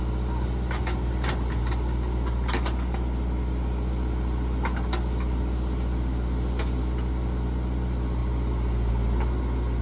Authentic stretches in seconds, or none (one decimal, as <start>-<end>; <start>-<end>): 0.0-9.8